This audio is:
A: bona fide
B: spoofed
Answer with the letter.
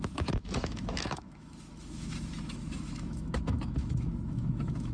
B